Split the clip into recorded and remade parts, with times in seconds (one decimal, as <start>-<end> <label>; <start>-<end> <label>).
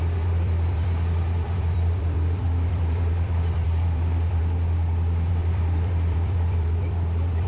0.0-4.4 remade; 4.4-5.3 recorded; 5.3-7.5 remade